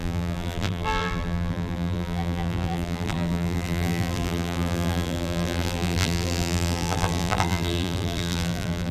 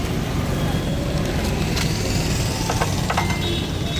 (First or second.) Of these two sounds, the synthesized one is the first